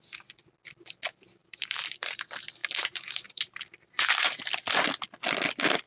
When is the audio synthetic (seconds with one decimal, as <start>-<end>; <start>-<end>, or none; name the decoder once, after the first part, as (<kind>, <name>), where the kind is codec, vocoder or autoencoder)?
1.4-2.2 (vocoder, BigVGAN v2); 2.6-4.3